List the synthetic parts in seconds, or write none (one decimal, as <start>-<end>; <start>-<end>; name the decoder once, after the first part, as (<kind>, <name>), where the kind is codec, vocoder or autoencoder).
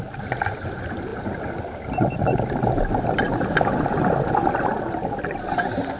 none